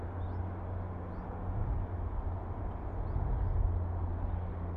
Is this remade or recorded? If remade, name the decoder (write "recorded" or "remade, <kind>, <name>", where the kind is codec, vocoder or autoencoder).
recorded